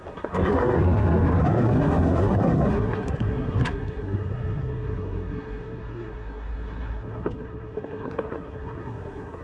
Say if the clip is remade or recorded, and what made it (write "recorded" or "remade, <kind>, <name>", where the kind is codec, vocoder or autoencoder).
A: remade, codec, SNAC